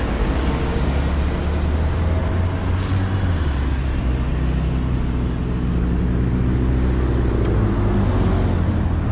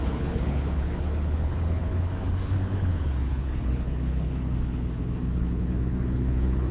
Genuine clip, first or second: first